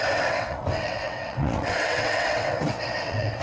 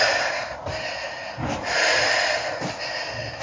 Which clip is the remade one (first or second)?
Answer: first